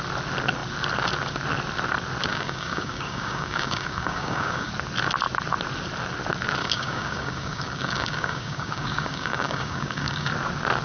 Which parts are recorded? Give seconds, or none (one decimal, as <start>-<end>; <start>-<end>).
0.0-2.3; 4.7-6.6; 10.3-10.8